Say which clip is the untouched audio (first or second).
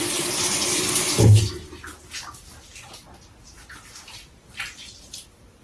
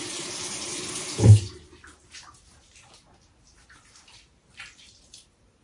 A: first